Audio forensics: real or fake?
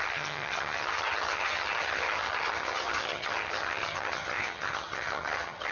fake